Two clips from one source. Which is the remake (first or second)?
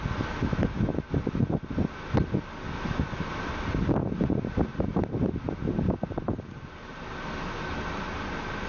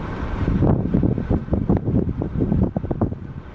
second